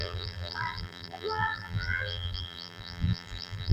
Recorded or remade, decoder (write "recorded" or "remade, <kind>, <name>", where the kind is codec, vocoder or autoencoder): remade, vocoder, BigVGAN v2